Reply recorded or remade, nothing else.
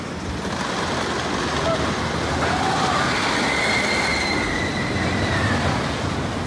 recorded